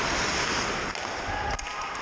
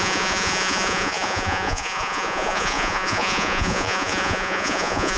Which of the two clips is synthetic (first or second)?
second